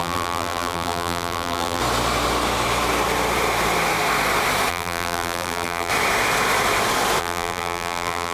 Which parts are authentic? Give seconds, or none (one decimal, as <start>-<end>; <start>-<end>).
1.8-4.7; 5.9-7.2